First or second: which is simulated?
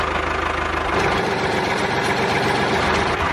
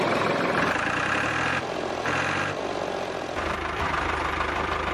second